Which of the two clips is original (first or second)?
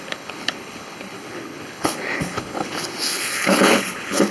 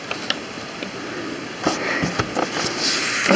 second